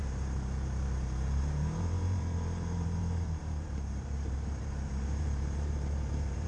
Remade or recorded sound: remade